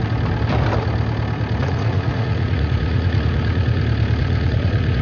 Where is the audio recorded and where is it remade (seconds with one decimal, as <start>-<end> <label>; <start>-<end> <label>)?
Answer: 0.0-1.6 recorded; 1.6-3.8 remade; 3.8-4.2 recorded; 4.2-5.0 remade